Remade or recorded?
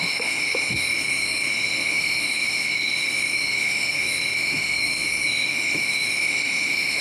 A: remade